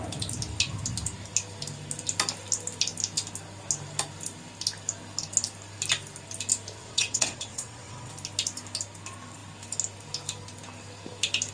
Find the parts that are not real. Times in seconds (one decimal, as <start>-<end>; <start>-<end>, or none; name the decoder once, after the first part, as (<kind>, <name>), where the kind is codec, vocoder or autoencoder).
6.8-8.1 (vocoder, WaveNeXt)